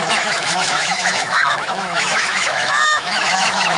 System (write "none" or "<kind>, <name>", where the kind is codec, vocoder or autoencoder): autoencoder, DAC-VAE